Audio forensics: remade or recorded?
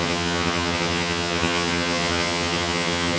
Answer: remade